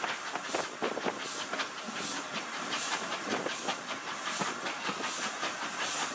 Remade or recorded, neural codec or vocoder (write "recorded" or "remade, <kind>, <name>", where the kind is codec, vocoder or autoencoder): recorded